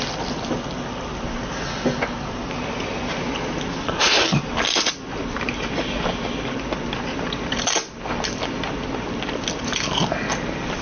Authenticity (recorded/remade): recorded